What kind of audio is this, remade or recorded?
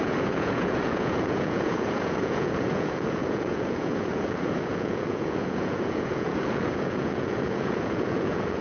remade